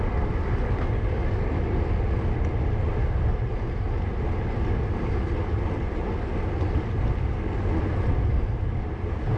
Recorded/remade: recorded